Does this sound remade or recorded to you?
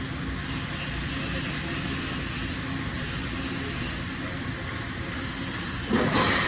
recorded